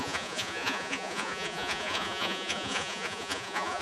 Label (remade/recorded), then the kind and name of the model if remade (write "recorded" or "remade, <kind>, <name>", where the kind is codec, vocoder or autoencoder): remade, vocoder, Vocos